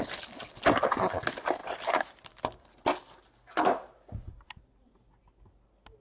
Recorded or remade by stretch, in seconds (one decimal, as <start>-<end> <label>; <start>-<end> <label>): 0.0-6.0 recorded